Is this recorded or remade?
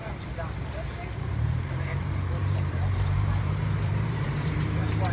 remade